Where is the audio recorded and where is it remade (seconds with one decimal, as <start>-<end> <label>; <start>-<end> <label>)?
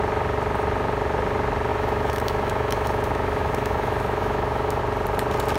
0.0-1.7 recorded; 1.7-4.8 remade; 4.8-5.6 recorded